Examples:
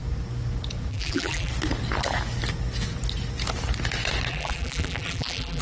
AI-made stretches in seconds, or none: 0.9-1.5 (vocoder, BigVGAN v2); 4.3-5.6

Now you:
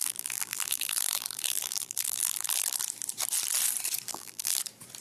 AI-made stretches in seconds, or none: 0.0-2.8 (vocoder, BigVGAN v2); 4.1-4.6

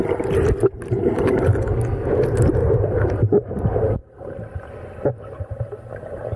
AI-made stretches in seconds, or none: 2.6-3.1 (vocoder, BigVGAN v2); 4.0-4.7